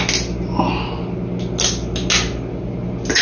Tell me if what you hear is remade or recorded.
recorded